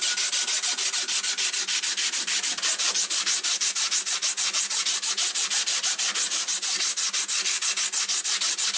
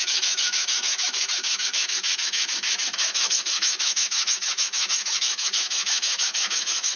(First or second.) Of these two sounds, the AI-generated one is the second